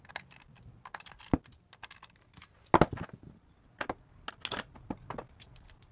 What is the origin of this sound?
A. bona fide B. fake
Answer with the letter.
A